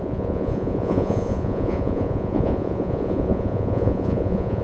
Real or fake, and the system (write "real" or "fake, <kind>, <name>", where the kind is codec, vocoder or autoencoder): fake, vocoder, Vocos